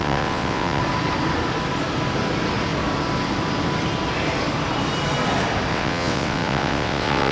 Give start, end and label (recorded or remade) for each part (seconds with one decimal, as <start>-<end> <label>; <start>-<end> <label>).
0.0-0.8 remade; 0.8-5.7 recorded; 5.7-7.3 remade